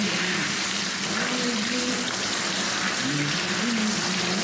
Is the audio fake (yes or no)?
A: no